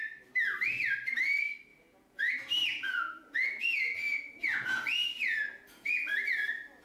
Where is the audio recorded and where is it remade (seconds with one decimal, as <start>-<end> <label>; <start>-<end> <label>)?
0.0-1.7 recorded; 1.7-2.3 remade; 2.3-2.7 recorded; 2.7-6.0 remade; 6.0-6.8 recorded

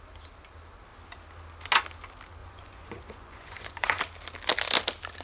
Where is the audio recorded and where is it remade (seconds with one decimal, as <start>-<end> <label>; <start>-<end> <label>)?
0.0-2.4 recorded; 2.4-4.0 remade; 4.0-5.2 recorded